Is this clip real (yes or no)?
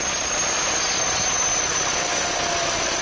yes